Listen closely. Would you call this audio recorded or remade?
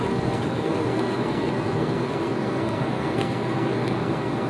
remade